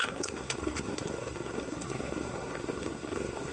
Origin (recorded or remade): remade